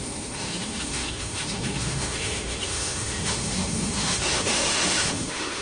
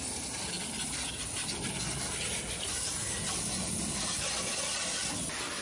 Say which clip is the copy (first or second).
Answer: first